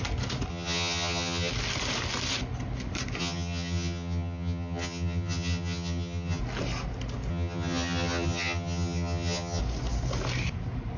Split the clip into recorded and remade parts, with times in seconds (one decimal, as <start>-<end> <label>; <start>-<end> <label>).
0.0-0.5 recorded; 0.5-1.5 remade; 1.5-3.2 recorded; 3.2-6.4 remade; 6.4-7.3 recorded; 7.3-9.6 remade; 9.6-11.0 recorded